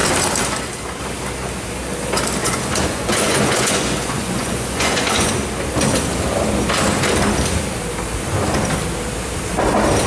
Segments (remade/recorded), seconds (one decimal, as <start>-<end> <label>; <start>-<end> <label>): 0.0-2.4 recorded; 2.4-5.3 remade; 5.3-10.1 recorded